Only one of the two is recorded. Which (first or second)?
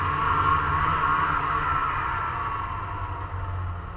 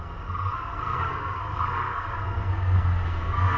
first